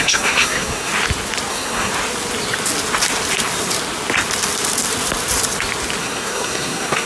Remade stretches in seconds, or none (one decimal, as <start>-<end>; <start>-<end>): 0.0-0.9; 1.5-1.9; 6.0-7.1

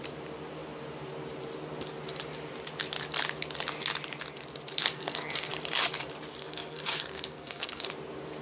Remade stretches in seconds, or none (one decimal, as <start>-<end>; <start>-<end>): 4.8-5.5; 6.4-7.9

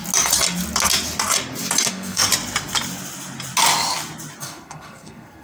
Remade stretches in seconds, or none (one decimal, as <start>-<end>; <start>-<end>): 1.9-2.3; 4.4-5.4

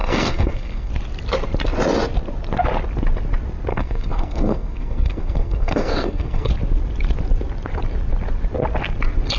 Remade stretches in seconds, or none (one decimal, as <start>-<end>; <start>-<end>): 0.0-0.9; 3.7-6.5

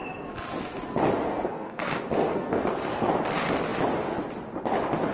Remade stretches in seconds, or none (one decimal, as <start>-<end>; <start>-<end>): 1.3-3.1

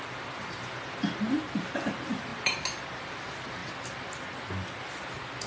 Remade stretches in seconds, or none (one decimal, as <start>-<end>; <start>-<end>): none